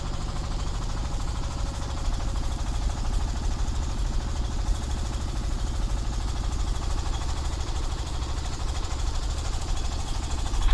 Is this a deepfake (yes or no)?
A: yes